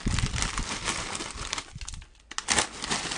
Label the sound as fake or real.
real